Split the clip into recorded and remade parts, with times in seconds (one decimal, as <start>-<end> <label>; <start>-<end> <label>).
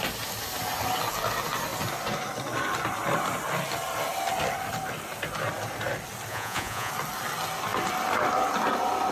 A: 0.0-6.3 recorded; 6.3-6.9 remade; 6.9-9.1 recorded